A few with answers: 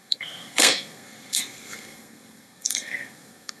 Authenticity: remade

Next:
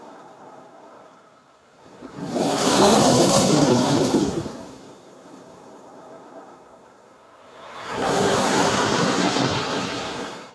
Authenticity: remade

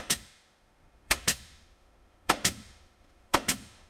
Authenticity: remade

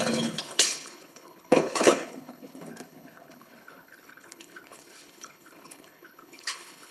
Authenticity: remade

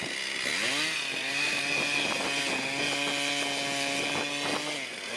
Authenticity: recorded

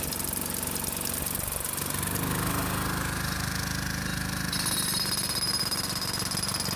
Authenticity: recorded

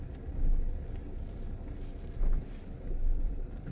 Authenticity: recorded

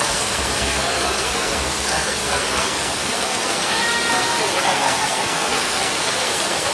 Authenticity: remade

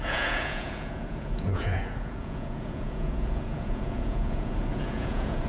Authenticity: remade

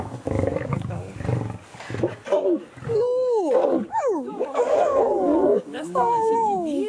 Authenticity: remade